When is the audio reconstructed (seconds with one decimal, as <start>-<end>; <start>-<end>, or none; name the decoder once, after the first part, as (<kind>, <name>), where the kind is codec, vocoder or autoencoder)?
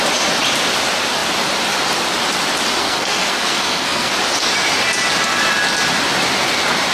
2.8-4.1 (codec, SNAC)